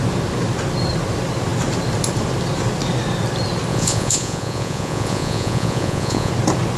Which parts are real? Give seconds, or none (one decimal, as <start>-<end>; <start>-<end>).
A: 0.0-3.7; 6.3-6.8